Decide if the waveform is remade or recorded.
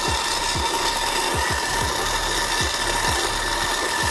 recorded